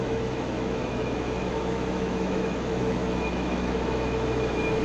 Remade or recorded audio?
remade